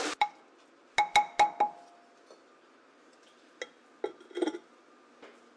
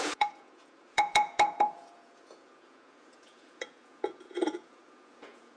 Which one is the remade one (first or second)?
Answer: second